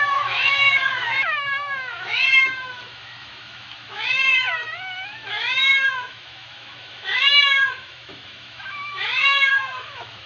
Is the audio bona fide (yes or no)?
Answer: no